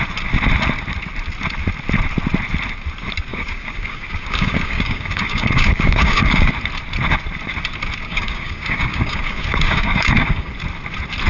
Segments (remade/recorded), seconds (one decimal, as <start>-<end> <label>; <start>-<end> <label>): 0.0-3.3 recorded; 3.3-6.5 remade; 6.5-8.0 recorded; 8.0-10.5 remade; 10.5-11.3 recorded